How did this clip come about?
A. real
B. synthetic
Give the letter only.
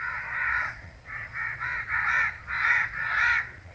B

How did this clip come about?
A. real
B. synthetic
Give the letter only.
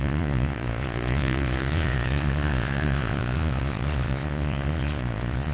B